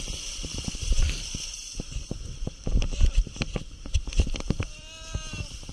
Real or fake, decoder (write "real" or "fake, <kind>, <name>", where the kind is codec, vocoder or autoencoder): fake, vocoder, BigVGAN v2